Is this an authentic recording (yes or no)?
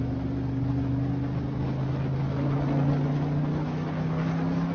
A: yes